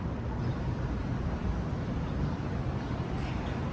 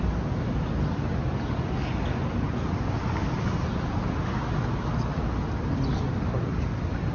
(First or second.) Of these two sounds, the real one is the second